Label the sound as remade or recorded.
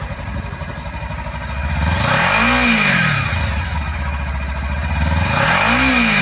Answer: recorded